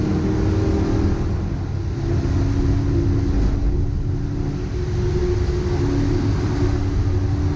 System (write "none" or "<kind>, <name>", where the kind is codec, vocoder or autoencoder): none